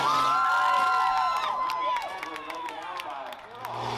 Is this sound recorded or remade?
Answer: recorded